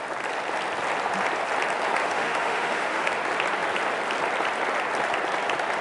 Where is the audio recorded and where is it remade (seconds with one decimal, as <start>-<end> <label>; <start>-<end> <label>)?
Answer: 0.0-2.0 recorded; 2.0-3.1 remade; 3.1-5.8 recorded